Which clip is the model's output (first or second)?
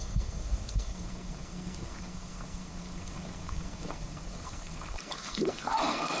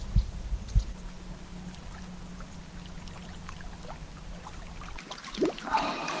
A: first